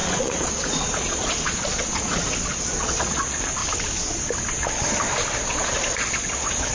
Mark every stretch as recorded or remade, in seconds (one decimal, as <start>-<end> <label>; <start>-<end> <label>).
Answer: 0.0-3.6 remade; 3.6-5.5 recorded; 5.5-6.7 remade